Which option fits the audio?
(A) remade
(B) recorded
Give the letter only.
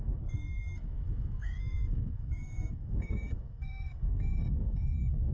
A